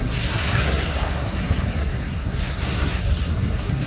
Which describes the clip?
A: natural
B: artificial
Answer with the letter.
B